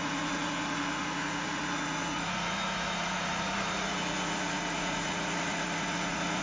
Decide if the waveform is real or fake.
fake